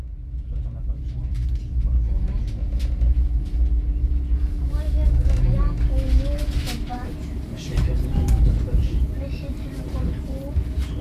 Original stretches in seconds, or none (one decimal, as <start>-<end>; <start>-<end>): 0.0-6.9; 10.6-11.0